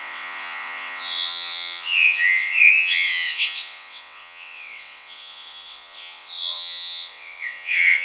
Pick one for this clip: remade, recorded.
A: remade